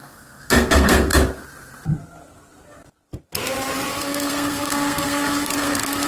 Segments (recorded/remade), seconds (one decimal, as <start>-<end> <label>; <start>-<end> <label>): 0.0-1.1 remade; 1.1-4.0 recorded; 4.0-6.1 remade